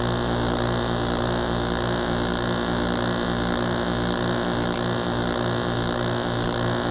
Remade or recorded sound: recorded